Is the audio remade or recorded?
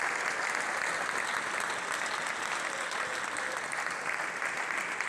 recorded